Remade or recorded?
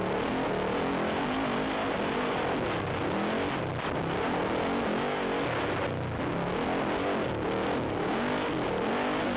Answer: recorded